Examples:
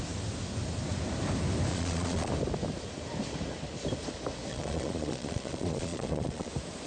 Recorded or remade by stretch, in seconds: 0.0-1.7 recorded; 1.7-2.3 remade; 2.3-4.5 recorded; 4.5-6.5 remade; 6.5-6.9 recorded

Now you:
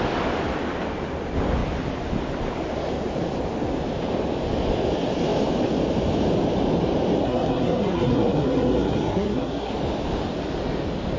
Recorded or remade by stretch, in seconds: 0.0-7.2 recorded; 7.2-9.7 remade; 9.7-11.2 recorded